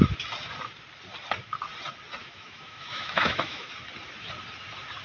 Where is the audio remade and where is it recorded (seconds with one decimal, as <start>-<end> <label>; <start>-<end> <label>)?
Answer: 0.0-2.2 recorded; 2.2-3.7 remade; 3.7-5.0 recorded